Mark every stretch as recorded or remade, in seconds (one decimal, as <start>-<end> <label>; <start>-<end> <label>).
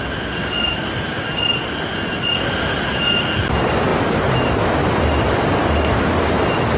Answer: 0.0-6.8 recorded